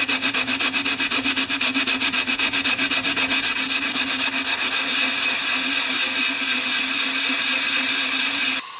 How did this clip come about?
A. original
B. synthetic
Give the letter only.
A